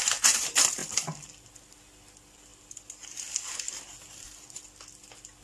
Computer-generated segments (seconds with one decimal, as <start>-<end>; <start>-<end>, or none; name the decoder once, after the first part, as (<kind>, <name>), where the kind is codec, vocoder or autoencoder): 0.8-1.4 (vocoder, BigVGAN v2)